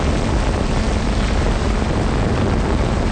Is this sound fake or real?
real